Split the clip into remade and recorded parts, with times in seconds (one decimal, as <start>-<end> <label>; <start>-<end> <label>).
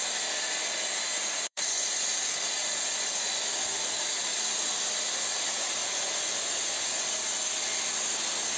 0.0-1.1 recorded; 1.1-2.1 remade; 2.1-2.6 recorded; 2.6-3.5 remade; 3.5-5.8 recorded; 5.8-7.1 remade; 7.1-8.6 recorded